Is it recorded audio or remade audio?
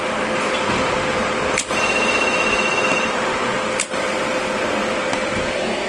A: recorded